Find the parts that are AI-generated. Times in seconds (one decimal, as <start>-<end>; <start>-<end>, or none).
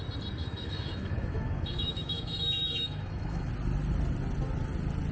0.4-3.5